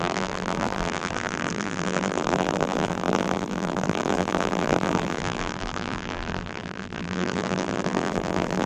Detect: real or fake fake